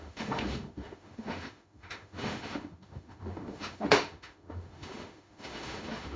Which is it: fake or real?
fake